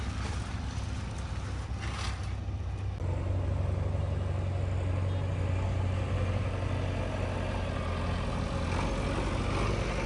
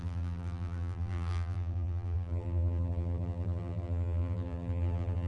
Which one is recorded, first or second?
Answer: first